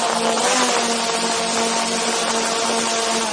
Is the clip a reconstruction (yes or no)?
no